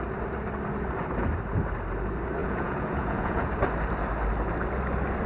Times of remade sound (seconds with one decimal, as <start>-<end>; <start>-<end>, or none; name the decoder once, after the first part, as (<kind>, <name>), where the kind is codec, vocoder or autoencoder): 2.4-3.5 (vocoder, Vocos)